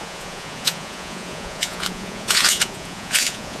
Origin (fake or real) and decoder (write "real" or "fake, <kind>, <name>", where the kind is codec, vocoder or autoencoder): fake, vocoder, Vocos